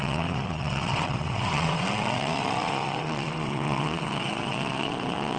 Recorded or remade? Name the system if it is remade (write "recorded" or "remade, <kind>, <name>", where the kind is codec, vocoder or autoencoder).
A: remade, vocoder, WaveNeXt